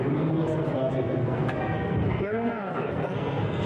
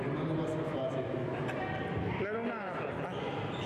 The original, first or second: second